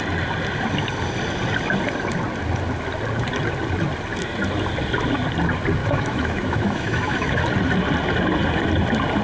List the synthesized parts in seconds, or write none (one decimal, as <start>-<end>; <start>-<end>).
5.8-7.4

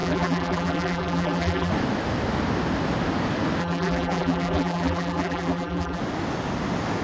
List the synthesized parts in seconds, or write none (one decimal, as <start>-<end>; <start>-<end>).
0.0-1.7; 3.6-6.0

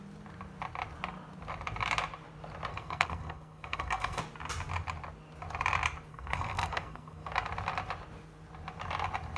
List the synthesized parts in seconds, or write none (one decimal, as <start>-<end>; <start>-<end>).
2.7-4.2; 6.1-7.3

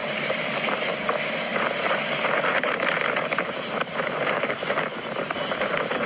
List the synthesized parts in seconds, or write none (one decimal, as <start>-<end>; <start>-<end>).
0.0-0.6; 1.5-4.5

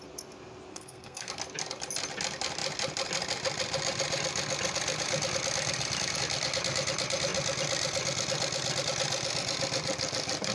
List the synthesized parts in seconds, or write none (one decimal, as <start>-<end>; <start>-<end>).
0.7-1.3

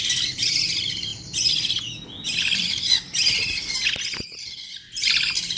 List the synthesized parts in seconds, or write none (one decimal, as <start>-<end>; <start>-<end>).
none

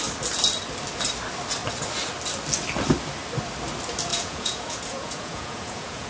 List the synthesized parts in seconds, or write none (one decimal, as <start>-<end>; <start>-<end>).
4.1-6.1